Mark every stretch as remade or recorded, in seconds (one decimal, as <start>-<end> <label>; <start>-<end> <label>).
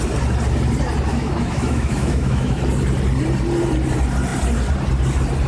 0.0-1.1 recorded; 1.1-2.6 remade; 2.6-5.5 recorded